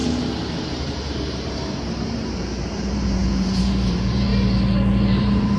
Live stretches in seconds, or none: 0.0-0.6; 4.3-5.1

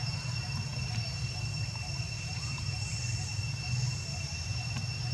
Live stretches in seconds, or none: 0.0-5.1

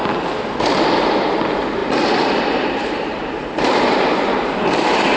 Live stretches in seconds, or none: 0.0-1.8; 4.5-5.2